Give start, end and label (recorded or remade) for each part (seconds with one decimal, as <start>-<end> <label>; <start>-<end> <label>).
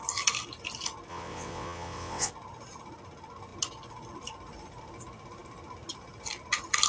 0.0-1.1 recorded; 1.1-2.3 remade; 2.3-6.9 recorded